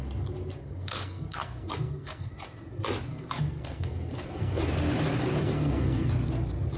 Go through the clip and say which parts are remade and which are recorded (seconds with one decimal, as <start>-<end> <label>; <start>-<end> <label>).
0.0-0.6 recorded; 0.6-2.3 remade; 2.3-3.1 recorded; 3.1-4.6 remade; 4.6-5.4 recorded; 5.4-6.1 remade; 6.1-6.8 recorded